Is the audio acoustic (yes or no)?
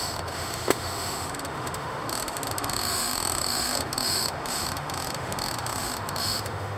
no